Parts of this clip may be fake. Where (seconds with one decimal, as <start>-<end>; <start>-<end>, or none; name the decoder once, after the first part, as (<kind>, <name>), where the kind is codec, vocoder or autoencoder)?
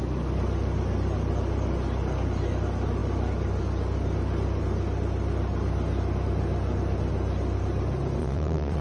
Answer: 8.2-8.8 (vocoder, Vocos)